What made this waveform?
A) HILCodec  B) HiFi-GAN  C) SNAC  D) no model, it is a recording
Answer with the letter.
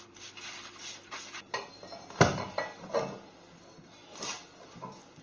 D